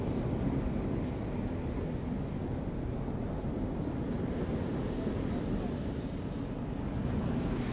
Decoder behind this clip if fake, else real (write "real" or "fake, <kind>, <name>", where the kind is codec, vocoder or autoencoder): real